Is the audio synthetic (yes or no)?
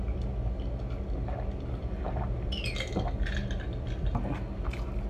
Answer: no